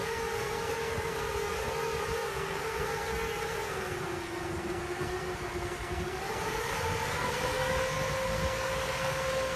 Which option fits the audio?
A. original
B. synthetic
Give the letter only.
B